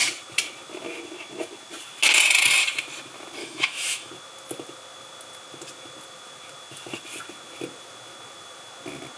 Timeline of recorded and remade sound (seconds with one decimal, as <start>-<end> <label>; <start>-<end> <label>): 0.0-3.4 recorded; 3.4-4.1 remade; 4.1-9.2 recorded